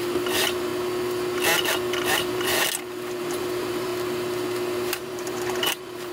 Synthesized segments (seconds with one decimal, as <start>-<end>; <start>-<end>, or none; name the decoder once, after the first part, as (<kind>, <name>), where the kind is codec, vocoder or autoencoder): 0.0-0.7 (vocoder, BigVGAN v2); 2.0-2.5; 3.2-3.9; 5.0-6.1